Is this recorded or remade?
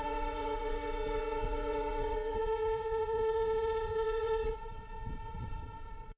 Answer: remade